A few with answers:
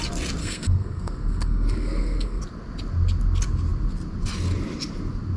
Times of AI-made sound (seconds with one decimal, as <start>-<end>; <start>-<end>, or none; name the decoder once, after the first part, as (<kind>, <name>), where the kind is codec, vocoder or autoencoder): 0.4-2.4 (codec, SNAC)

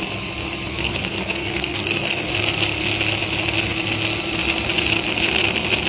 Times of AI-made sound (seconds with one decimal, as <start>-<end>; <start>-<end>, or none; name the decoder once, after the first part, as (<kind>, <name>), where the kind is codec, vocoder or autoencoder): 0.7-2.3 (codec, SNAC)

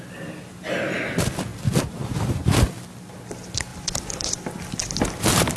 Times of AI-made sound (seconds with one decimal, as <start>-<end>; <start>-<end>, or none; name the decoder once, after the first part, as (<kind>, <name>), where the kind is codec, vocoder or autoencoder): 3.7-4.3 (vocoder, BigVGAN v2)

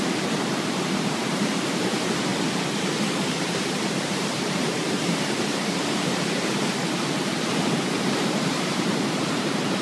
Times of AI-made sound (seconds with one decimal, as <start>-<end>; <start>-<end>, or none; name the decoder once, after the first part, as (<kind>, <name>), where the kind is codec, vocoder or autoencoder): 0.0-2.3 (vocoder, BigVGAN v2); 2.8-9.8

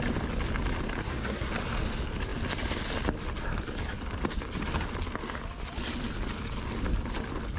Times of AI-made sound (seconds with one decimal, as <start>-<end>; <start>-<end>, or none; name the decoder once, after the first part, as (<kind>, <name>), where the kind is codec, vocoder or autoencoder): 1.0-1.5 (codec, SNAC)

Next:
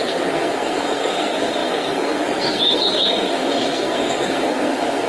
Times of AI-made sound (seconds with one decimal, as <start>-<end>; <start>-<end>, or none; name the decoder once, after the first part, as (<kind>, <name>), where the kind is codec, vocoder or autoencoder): 0.0-5.1 (codec, SNAC)

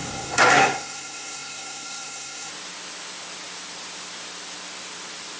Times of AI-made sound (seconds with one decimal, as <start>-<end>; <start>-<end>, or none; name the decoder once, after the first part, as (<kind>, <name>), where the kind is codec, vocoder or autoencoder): 0.0-2.5 (codec, SNAC)

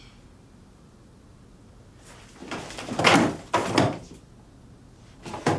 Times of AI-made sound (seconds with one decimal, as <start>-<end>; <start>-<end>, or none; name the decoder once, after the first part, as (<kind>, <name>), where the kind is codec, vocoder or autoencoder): 2.4-3.0 (vocoder, BigVGAN v2); 3.6-4.3